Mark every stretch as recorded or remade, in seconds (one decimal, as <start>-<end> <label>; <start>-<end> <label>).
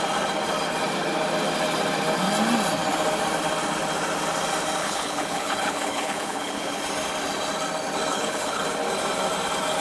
0.0-4.8 recorded; 4.8-6.8 remade; 6.8-8.1 recorded; 8.1-8.6 remade; 8.6-9.8 recorded